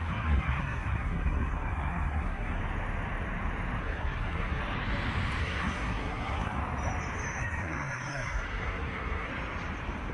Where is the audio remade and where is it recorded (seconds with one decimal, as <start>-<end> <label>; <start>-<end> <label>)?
0.0-2.6 remade; 2.6-3.8 recorded; 3.8-4.6 remade; 4.6-5.4 recorded; 5.4-6.6 remade; 6.6-7.4 recorded; 7.4-9.3 remade; 9.3-10.1 recorded